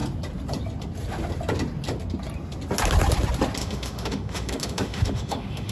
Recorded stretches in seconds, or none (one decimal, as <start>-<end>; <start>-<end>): 0.0-3.6